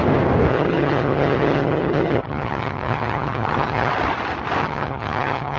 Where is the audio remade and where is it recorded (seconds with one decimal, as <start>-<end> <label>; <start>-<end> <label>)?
0.0-0.5 recorded; 0.5-3.9 remade; 3.9-4.6 recorded; 4.6-5.6 remade